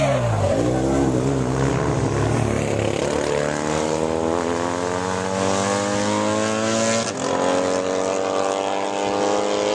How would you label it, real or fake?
real